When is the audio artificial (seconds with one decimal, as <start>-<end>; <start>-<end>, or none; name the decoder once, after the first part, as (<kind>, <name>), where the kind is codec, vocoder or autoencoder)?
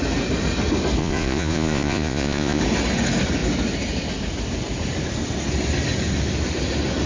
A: 1.0-2.6 (vocoder, Vocos)